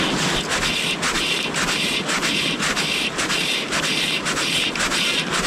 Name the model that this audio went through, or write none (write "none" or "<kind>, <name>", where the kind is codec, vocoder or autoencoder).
none